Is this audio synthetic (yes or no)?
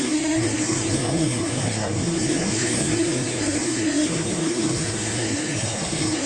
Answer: yes